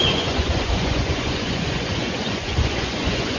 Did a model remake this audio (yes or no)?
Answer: yes